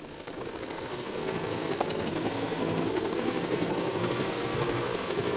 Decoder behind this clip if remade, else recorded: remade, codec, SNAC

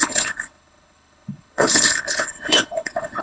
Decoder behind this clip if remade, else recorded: remade, codec, HILCodec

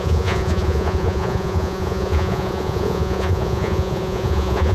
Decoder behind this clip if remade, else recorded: remade, vocoder, Vocos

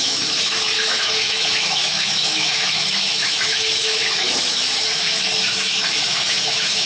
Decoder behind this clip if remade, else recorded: remade, autoencoder, DAC-VAE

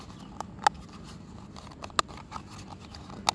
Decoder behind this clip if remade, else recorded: recorded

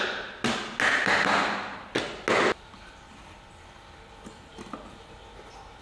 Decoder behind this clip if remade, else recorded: recorded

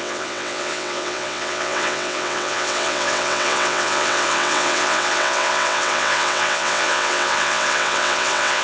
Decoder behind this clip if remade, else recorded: remade, vocoder, WaveNeXt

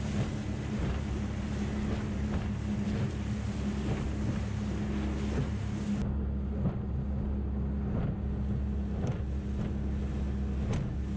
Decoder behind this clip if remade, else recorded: recorded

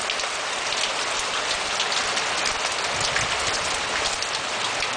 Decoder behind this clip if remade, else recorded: recorded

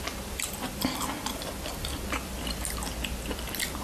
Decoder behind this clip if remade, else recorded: recorded